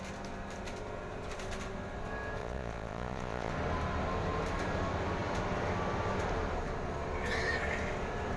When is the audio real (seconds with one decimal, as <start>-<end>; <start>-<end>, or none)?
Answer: 0.0-2.4; 3.5-8.4